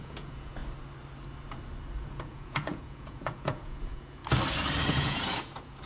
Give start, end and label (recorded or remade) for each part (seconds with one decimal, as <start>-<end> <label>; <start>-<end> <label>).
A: 0.0-0.6 remade; 0.6-2.0 recorded; 2.0-4.2 remade; 4.2-4.9 recorded; 4.9-5.9 remade